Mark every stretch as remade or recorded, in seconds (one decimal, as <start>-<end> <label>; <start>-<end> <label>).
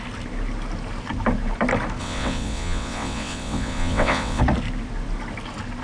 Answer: 0.0-2.0 recorded; 2.0-4.4 remade; 4.4-5.8 recorded